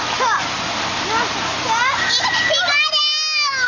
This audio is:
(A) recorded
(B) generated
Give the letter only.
A